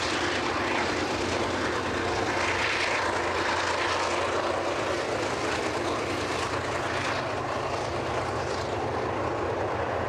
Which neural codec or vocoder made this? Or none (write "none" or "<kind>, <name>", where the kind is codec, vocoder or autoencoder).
none